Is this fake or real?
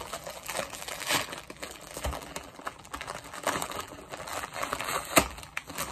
fake